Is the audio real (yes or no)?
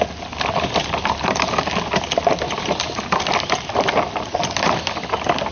yes